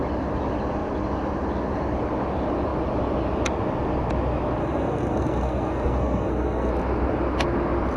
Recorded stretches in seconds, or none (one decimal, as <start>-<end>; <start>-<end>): 0.0-4.6; 6.7-8.0